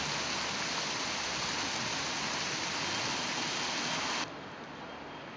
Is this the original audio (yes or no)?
yes